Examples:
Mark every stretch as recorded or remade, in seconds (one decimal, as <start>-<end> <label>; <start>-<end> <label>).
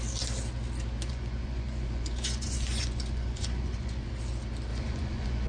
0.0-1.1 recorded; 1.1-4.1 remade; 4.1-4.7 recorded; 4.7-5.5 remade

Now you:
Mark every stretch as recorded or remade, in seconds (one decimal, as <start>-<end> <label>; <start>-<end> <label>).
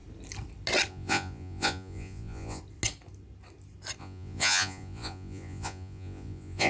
0.0-0.9 recorded; 0.9-2.6 remade; 2.6-4.0 recorded; 4.0-6.7 remade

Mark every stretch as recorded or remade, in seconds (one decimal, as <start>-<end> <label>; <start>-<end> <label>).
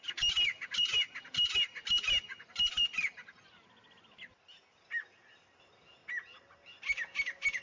0.0-7.6 recorded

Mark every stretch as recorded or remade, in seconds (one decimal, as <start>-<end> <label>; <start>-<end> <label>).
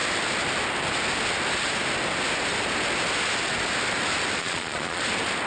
0.0-4.4 recorded; 4.4-5.0 remade; 5.0-5.5 recorded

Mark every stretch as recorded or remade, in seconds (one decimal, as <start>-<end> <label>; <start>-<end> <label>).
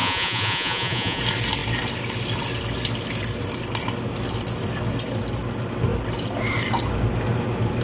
0.0-1.2 remade; 1.2-7.8 recorded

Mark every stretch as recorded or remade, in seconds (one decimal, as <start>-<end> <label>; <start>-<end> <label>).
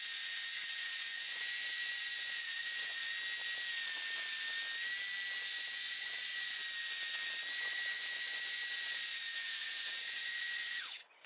0.0-3.0 remade; 3.0-5.5 recorded; 5.5-6.6 remade; 6.6-7.5 recorded; 7.5-11.3 remade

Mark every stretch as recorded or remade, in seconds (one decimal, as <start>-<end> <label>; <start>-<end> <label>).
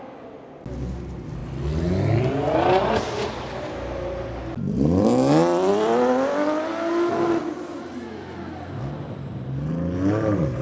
0.0-10.6 recorded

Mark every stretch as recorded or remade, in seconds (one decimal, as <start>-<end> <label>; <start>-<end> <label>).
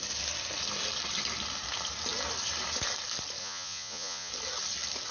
0.0-3.4 recorded; 3.4-4.3 remade; 4.3-5.1 recorded